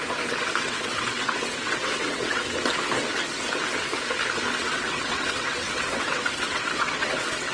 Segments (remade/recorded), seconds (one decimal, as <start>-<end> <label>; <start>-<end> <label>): 0.0-2.4 remade; 2.4-4.6 recorded; 4.6-7.5 remade